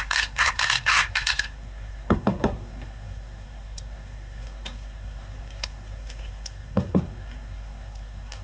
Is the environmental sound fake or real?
fake